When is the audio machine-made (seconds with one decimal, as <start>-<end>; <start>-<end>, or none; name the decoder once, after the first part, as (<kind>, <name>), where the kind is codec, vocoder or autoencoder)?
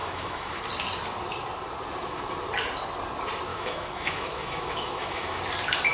0.0-0.6 (autoencoder, DAC-VAE); 3.5-5.4